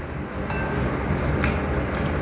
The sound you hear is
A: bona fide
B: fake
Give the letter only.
A